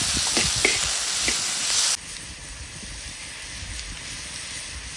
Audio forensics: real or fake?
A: real